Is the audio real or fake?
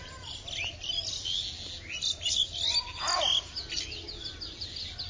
real